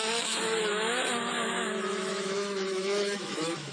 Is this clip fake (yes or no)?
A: yes